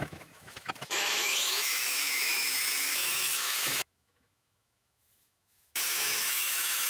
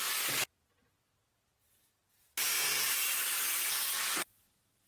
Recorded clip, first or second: second